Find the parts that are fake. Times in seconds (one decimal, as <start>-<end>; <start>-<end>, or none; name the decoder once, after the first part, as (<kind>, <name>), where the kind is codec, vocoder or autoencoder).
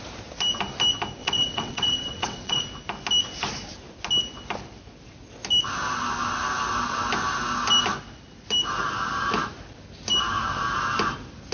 1.2-2.6 (vocoder, WaveNeXt)